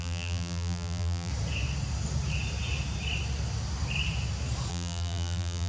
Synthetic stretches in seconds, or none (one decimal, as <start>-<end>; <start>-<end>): 0.0-1.3; 4.7-5.7